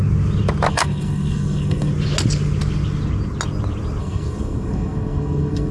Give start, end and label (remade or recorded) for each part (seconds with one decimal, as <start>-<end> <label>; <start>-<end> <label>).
0.0-0.7 recorded; 0.7-1.9 remade; 1.9-4.0 recorded; 4.0-5.7 remade